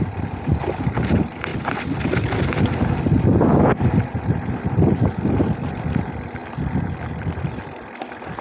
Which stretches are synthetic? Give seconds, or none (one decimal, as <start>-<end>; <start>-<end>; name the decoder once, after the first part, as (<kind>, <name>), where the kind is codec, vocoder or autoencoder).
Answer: 0.0-1.5 (vocoder, BigVGAN v2); 4.6-6.4; 7.6-8.4